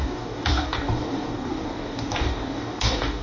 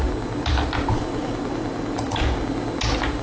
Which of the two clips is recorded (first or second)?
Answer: second